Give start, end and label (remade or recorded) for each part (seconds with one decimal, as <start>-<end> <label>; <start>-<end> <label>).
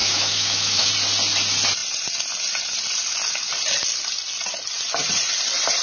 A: 0.0-0.9 remade; 0.9-5.8 recorded